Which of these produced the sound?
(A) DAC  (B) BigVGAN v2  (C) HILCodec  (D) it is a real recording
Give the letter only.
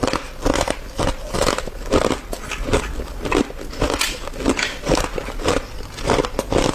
D